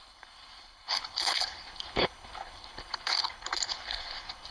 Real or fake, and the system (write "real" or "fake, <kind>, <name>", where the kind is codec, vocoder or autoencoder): fake, codec, HILCodec